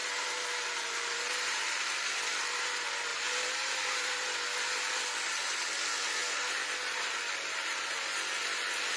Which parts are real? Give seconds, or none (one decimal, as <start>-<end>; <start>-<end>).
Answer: 2.1-3.1; 4.3-9.0